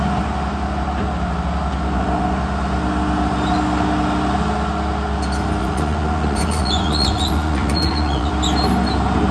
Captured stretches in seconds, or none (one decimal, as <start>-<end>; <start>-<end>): 0.0-5.6; 8.3-9.3